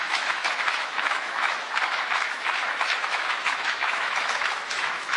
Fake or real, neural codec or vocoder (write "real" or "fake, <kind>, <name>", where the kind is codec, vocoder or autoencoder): fake, autoencoder, DAC-VAE